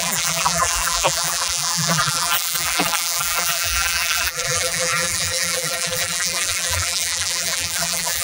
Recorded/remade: remade